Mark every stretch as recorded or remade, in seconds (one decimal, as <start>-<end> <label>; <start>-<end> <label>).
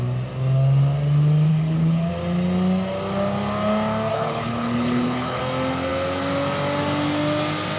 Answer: 0.0-1.5 recorded; 1.5-2.1 remade; 2.1-4.1 recorded; 4.1-5.4 remade; 5.4-7.8 recorded